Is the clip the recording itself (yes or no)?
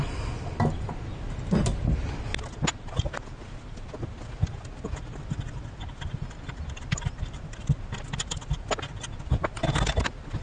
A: yes